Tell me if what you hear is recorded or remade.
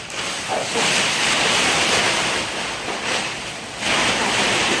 recorded